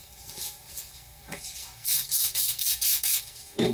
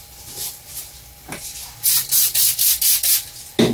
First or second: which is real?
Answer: second